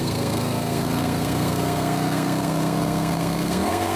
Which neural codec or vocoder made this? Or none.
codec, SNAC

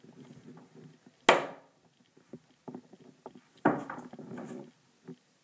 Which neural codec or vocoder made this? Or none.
none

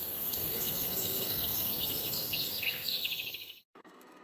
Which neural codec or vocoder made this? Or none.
codec, SNAC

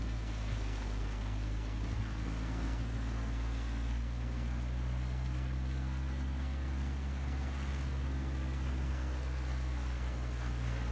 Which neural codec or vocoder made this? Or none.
codec, SNAC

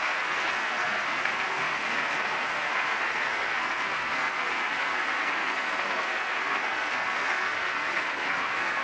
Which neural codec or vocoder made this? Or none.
codec, SNAC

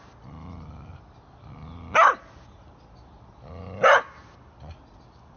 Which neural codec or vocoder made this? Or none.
none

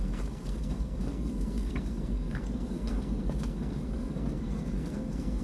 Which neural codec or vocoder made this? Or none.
codec, SNAC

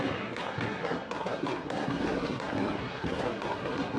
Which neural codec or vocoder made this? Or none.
codec, SNAC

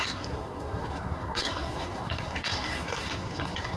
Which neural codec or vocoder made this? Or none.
codec, SNAC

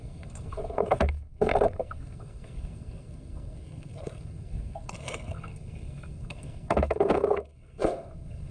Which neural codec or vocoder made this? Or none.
codec, SNAC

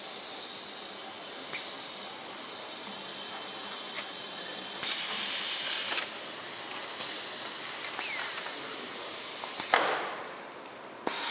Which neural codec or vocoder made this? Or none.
none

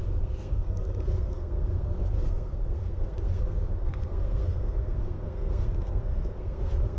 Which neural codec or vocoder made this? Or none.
codec, SNAC